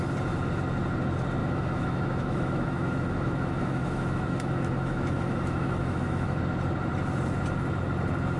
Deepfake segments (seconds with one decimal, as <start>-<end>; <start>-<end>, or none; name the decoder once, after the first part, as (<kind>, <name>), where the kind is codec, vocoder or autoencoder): 1.4-6.4 (autoencoder, DAC-VAE)